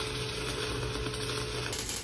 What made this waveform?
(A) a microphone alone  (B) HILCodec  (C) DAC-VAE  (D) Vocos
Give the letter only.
A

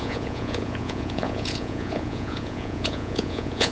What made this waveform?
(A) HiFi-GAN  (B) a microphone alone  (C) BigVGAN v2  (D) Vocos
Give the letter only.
D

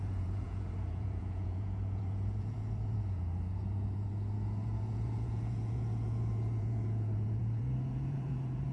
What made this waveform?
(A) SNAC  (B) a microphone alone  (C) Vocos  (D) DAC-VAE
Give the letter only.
C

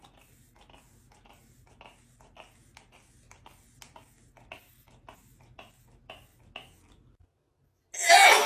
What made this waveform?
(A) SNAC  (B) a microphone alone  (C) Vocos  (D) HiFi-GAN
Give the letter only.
B